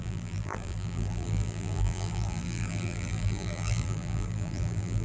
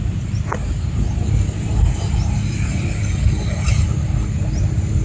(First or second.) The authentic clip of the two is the second